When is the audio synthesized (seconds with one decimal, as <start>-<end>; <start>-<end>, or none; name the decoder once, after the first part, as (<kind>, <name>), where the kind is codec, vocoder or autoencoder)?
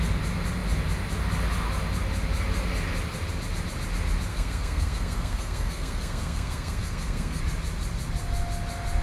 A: 4.3-7.4 (codec, SNAC)